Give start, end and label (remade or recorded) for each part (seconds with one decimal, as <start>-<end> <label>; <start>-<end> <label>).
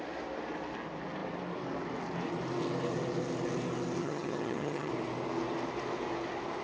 0.0-4.0 recorded; 4.0-4.9 remade; 4.9-6.6 recorded